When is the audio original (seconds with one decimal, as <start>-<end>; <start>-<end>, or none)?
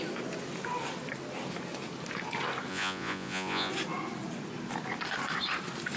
0.0-2.7; 3.7-6.0